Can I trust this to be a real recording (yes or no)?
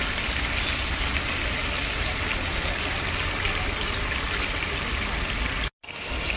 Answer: yes